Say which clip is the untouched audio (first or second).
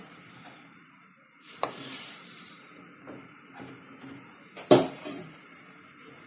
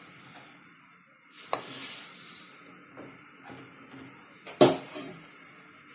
second